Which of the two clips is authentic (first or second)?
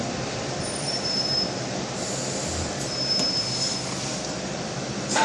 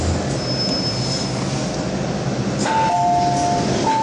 second